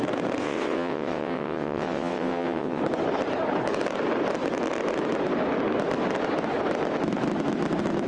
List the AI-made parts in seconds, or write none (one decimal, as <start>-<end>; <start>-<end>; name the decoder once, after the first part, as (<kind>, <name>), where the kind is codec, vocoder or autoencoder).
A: 0.4-2.8 (vocoder, WaveNeXt)